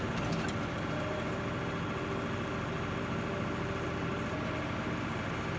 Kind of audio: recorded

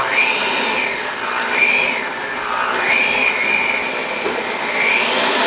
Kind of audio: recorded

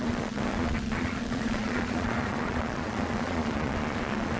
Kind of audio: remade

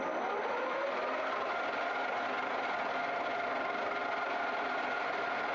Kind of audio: recorded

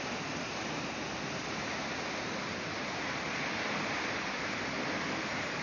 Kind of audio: recorded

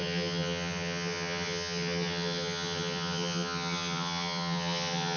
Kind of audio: remade